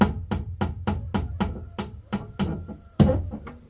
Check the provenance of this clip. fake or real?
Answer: real